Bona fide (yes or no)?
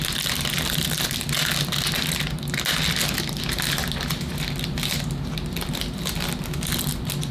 yes